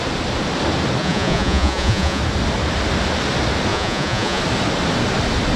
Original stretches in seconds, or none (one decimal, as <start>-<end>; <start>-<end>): 0.0-1.0; 2.2-3.7; 4.4-5.6